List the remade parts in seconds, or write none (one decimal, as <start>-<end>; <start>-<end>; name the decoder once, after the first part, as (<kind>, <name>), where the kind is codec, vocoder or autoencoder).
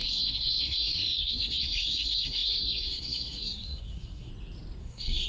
0.0-4.3 (codec, SNAC); 4.8-5.3